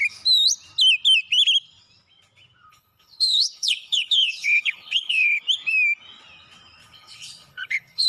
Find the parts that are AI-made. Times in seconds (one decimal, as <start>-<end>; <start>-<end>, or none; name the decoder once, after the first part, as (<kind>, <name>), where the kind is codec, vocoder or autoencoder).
2.7-5.4 (codec, HILCodec); 6.8-8.1